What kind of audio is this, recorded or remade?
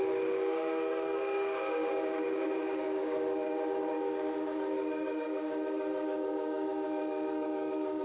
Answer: remade